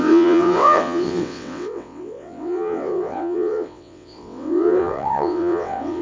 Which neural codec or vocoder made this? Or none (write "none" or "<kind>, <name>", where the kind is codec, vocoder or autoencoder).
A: vocoder, WaveNeXt